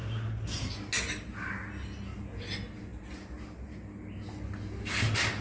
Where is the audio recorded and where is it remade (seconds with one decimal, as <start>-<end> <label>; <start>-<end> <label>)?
0.0-0.7 remade; 0.7-5.4 recorded